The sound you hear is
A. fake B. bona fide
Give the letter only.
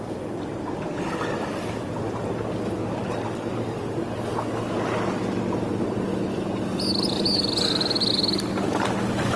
B